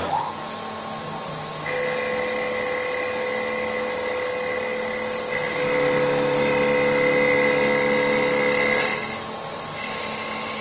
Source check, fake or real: real